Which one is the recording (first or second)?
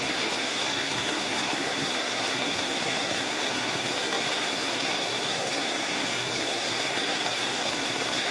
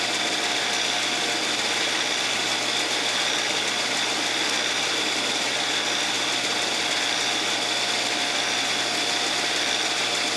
second